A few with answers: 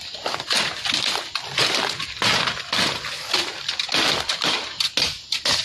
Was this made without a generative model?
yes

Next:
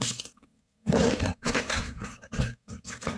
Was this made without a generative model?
no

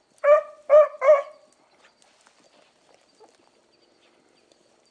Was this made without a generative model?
yes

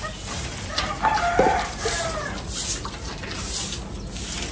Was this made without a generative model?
yes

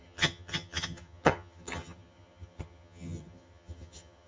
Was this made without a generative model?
no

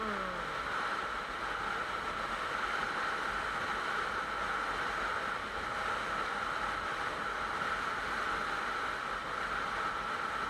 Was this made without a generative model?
yes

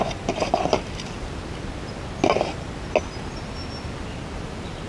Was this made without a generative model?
yes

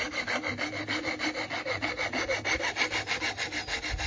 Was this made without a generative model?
yes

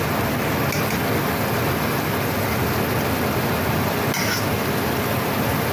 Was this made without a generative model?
yes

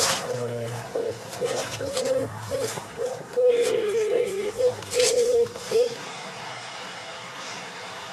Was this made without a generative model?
no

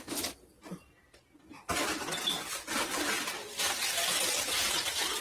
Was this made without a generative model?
yes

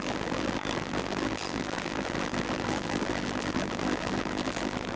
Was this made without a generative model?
no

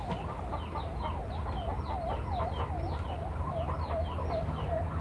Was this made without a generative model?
yes